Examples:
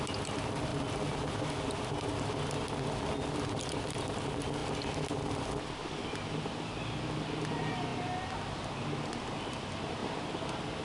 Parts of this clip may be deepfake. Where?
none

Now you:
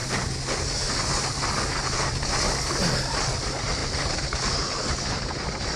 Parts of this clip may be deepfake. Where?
none

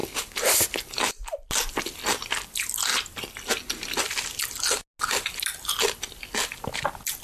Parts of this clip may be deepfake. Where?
none